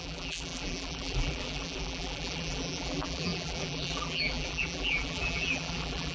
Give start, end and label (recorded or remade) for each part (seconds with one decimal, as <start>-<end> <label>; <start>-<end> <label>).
0.0-6.1 remade